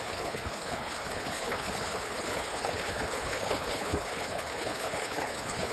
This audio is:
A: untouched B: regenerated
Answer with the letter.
B